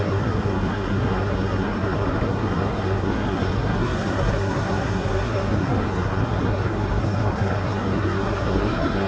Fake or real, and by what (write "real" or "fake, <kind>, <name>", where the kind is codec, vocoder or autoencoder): fake, codec, SNAC